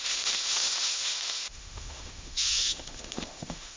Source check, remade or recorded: remade